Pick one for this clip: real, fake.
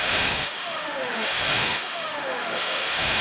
fake